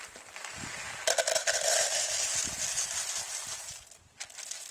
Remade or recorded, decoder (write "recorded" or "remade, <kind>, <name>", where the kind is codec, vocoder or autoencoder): recorded